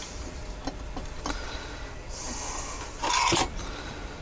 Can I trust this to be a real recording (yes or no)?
yes